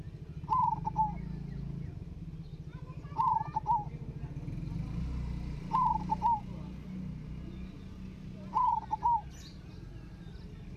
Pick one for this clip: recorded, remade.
recorded